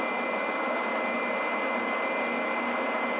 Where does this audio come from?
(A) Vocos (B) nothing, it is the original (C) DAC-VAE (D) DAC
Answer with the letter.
B